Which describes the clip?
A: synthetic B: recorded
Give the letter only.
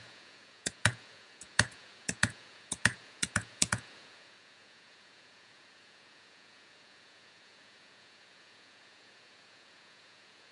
A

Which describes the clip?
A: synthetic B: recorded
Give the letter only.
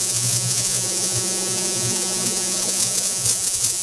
A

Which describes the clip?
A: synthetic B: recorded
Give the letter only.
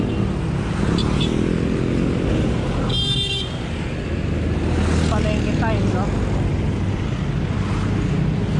B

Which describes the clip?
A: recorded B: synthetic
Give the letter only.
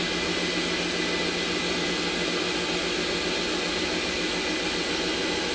A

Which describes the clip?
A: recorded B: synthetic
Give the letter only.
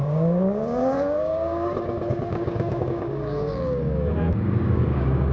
B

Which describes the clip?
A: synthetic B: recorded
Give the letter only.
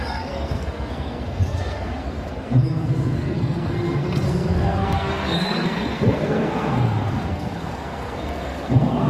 A